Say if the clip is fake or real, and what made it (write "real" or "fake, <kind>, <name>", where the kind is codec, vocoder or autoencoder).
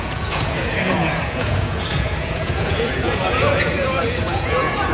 fake, vocoder, Vocos